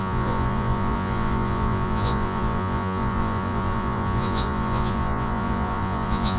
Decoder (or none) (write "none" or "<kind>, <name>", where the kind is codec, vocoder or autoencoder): vocoder, Vocos